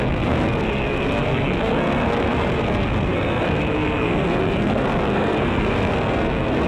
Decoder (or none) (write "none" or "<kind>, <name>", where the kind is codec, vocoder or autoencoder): codec, SNAC